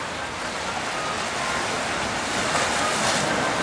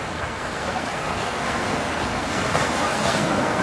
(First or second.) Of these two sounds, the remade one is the second